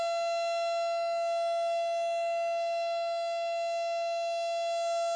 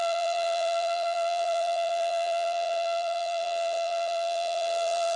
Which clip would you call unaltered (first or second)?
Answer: first